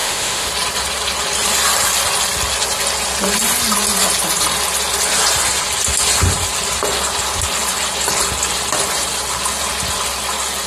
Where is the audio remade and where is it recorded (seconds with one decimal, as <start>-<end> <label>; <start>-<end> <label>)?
0.0-0.5 remade; 0.5-10.7 recorded